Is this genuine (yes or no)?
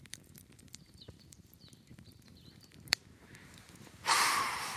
no